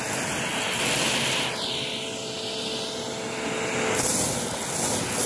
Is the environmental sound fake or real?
real